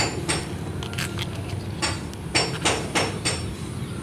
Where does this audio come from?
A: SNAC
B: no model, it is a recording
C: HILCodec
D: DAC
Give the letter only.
B